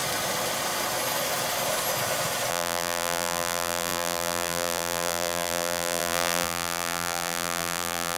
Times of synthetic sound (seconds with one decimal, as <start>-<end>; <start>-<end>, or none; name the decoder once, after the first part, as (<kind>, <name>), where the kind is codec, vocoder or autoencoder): 2.5-8.2 (vocoder, BigVGAN v2)